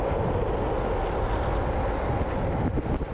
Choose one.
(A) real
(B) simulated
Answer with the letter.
A